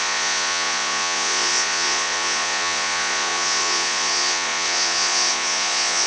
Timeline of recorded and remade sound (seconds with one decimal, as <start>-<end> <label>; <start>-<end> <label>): 0.0-6.1 remade